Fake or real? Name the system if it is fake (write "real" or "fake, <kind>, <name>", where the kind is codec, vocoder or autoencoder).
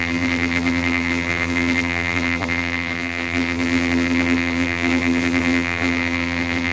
fake, vocoder, BigVGAN v2